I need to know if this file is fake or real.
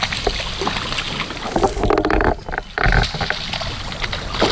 real